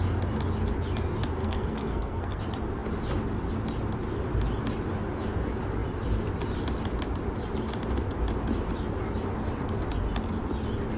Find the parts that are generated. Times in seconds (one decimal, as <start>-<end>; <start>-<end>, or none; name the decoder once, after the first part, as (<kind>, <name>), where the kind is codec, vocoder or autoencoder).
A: 1.4-2.4 (codec, SNAC)

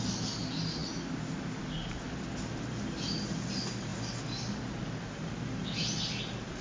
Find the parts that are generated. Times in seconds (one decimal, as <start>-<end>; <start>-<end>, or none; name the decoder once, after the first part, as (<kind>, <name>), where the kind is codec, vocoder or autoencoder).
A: none